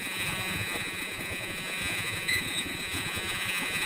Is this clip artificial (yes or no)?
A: yes